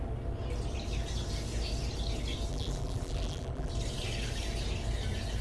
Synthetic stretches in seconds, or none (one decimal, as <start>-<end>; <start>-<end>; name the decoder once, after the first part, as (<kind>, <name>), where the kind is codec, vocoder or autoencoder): 2.5-3.7 (vocoder, BigVGAN v2)